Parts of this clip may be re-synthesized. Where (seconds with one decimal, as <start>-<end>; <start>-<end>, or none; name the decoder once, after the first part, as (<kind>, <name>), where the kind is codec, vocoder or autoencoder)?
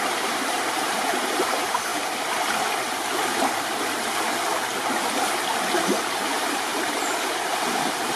0.0-1.9 (vocoder, BigVGAN v2); 6.1-8.2